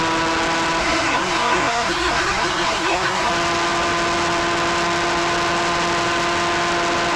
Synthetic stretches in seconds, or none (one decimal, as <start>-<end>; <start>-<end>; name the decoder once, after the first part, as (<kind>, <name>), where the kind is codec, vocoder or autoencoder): 0.8-3.3 (codec, SNAC)